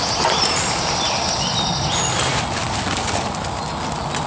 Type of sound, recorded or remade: recorded